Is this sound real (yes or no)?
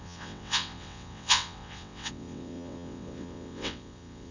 no